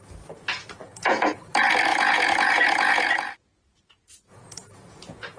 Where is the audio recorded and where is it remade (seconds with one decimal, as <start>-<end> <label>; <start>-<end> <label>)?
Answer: 0.0-0.8 recorded; 0.8-1.4 remade; 1.4-1.9 recorded; 1.9-5.4 remade